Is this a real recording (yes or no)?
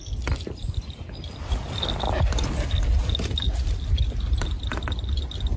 yes